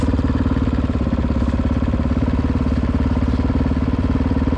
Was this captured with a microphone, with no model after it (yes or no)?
yes